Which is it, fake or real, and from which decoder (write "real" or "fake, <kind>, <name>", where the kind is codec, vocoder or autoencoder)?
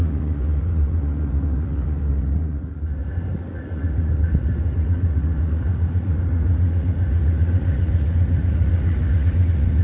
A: fake, vocoder, Vocos